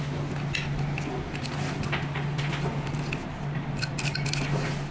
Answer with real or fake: real